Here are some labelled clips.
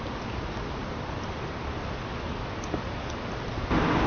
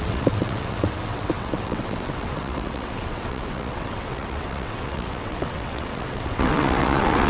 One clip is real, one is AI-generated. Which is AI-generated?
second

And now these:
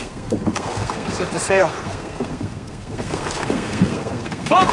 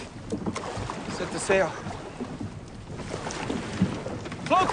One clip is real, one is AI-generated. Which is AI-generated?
first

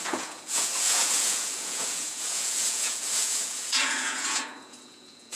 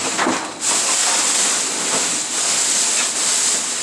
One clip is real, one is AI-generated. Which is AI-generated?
first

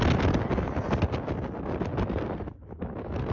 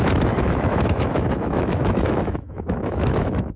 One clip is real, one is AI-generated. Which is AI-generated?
second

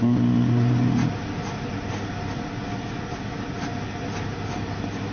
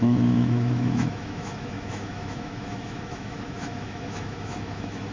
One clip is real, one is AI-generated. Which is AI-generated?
second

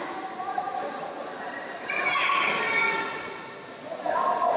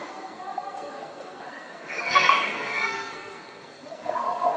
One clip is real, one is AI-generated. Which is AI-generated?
second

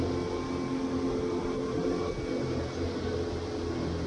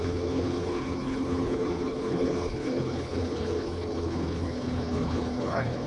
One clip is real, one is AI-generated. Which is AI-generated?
second